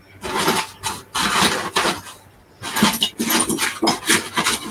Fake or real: real